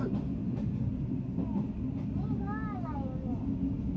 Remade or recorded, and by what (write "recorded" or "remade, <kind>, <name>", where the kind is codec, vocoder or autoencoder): recorded